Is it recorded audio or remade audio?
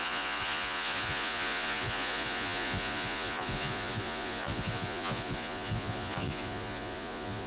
remade